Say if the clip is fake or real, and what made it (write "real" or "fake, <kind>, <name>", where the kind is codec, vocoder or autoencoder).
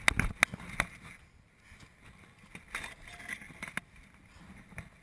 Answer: real